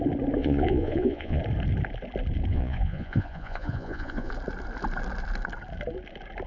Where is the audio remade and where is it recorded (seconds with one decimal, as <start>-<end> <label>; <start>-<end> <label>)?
0.0-0.4 recorded; 0.4-1.4 remade; 1.4-2.5 recorded; 2.5-4.3 remade; 4.3-6.5 recorded